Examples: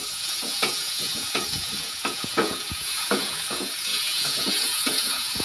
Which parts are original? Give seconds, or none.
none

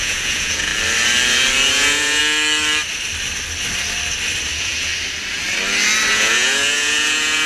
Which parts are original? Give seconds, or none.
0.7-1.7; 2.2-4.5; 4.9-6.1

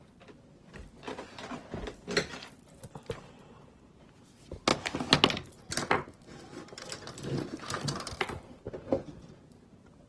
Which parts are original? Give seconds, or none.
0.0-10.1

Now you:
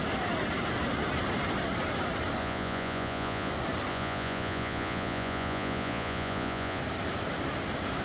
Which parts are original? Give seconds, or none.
0.0-2.4; 3.5-3.9; 6.8-8.0

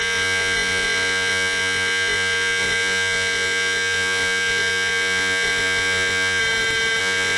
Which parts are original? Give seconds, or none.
6.4-7.0

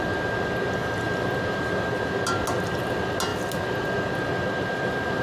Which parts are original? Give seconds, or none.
0.0-5.2

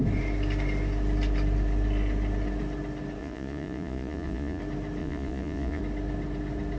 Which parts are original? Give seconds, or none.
0.0-3.2; 4.6-5.0; 5.8-6.8